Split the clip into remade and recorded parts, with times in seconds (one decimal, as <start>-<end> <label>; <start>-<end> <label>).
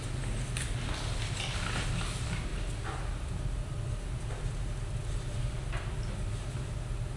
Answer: 0.0-7.2 recorded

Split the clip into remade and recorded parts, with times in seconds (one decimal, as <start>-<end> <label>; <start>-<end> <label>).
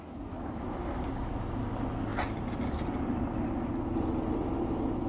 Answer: 0.0-5.1 recorded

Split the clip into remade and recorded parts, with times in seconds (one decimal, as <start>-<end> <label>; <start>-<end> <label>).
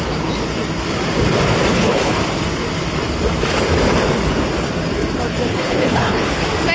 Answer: 0.0-1.7 recorded; 1.7-2.2 remade; 2.2-5.5 recorded; 5.5-6.2 remade; 6.2-6.7 recorded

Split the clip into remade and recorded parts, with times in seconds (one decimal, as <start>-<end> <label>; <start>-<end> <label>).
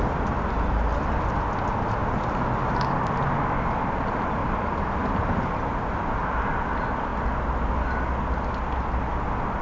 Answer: 0.0-2.0 recorded; 2.0-3.4 remade; 3.4-4.4 recorded; 4.4-5.9 remade; 5.9-9.6 recorded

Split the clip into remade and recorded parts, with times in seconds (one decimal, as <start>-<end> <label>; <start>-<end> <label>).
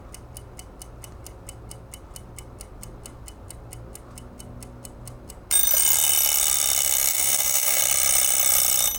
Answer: 0.0-7.1 recorded; 7.1-7.8 remade; 7.8-9.0 recorded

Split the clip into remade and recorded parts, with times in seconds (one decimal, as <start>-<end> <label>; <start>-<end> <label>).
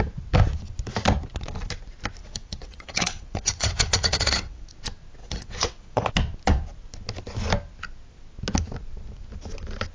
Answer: 0.0-2.2 recorded; 2.2-4.7 remade; 4.7-5.2 recorded; 5.2-6.1 remade; 6.1-9.9 recorded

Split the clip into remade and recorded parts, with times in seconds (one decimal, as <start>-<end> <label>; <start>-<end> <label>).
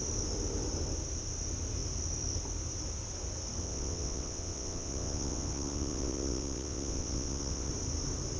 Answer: 0.0-3.6 recorded; 3.6-7.7 remade; 7.7-8.4 recorded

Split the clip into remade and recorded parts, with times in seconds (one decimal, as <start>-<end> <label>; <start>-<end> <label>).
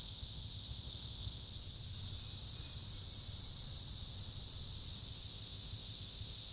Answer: 0.0-1.5 remade; 1.5-5.0 recorded; 5.0-6.5 remade